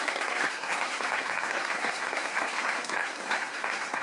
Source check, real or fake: fake